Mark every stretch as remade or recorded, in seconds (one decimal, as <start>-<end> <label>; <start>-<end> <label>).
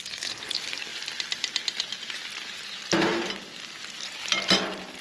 0.0-5.0 recorded